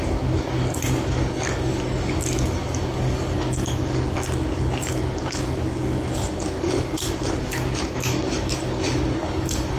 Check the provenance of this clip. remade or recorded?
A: remade